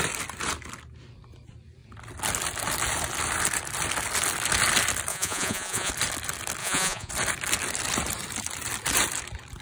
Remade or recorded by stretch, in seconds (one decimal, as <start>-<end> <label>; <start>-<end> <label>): 0.0-5.1 recorded; 5.1-5.9 remade; 5.9-6.6 recorded; 6.6-7.1 remade; 7.1-9.6 recorded